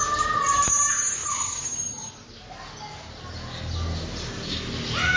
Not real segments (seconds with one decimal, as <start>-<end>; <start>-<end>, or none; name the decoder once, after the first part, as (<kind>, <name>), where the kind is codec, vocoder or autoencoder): none